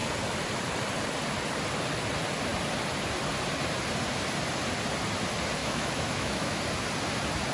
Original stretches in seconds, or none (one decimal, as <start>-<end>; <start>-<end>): 0.0-5.6; 6.6-7.5